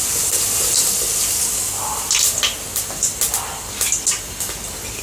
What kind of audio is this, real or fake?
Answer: real